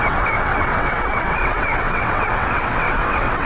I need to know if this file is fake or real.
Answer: fake